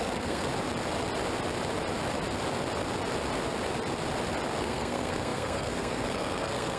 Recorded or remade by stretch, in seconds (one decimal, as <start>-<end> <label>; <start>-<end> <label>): 0.0-0.5 remade; 0.5-4.6 recorded; 4.6-6.8 remade